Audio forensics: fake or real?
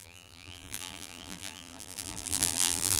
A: fake